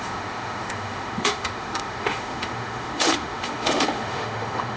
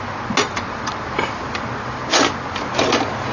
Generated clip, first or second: first